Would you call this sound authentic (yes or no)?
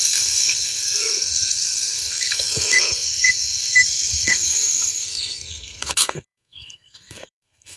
no